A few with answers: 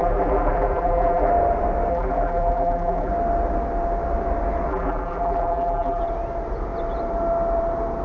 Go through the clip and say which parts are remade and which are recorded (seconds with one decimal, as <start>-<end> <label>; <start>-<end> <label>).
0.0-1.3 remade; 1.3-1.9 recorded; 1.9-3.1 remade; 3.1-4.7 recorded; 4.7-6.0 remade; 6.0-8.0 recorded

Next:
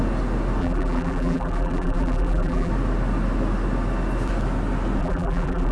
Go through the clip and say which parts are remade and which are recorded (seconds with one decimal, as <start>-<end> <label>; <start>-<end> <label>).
0.0-0.6 recorded; 0.6-2.7 remade; 2.7-5.0 recorded; 5.0-5.7 remade

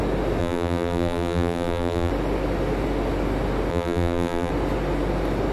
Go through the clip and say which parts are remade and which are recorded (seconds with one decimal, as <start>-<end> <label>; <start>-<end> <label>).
0.0-0.4 recorded; 0.4-2.1 remade; 2.1-3.7 recorded; 3.7-4.5 remade; 4.5-5.5 recorded

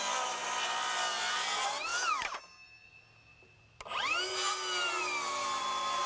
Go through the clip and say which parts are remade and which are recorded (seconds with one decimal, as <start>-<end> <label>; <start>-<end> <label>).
0.0-0.4 remade; 0.4-1.3 recorded; 1.3-1.9 remade; 1.9-5.6 recorded; 5.6-6.1 remade